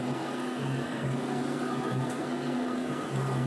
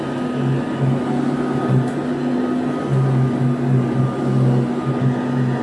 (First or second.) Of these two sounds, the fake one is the first